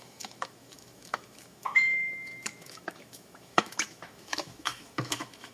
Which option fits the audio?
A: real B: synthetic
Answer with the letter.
B